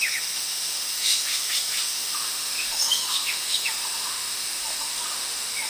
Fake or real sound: fake